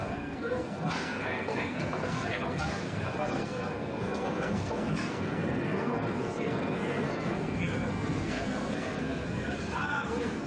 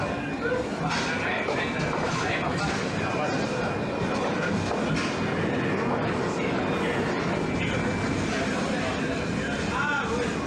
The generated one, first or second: first